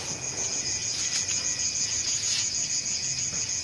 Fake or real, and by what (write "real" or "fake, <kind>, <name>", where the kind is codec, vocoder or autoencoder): fake, vocoder, Vocos